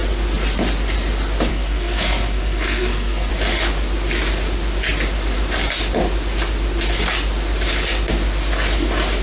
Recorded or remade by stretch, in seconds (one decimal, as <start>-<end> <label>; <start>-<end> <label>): 0.0-1.5 recorded; 1.5-3.3 remade; 3.3-9.2 recorded